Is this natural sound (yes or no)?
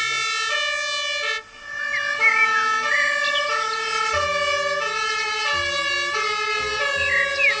yes